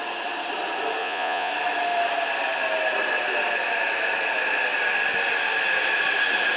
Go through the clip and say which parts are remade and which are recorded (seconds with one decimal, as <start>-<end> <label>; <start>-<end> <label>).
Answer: 0.0-1.0 recorded; 1.0-1.5 remade; 1.5-6.6 recorded